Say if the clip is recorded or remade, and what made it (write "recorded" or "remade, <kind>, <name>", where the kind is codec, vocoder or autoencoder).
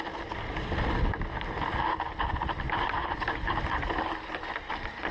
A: recorded